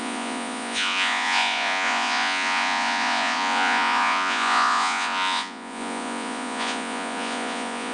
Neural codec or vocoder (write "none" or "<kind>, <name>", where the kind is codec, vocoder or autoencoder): vocoder, Vocos